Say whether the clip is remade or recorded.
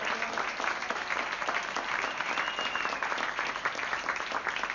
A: recorded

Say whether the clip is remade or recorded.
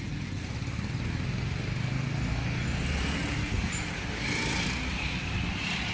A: recorded